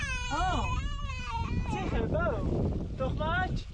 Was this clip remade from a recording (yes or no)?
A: no